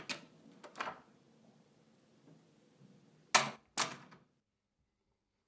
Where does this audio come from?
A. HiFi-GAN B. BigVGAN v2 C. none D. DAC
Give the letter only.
C